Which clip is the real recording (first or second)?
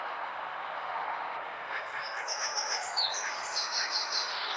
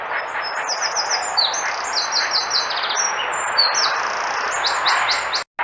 second